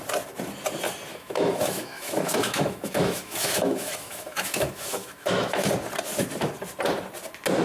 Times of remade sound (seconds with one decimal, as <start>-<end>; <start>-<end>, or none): 1.1-5.7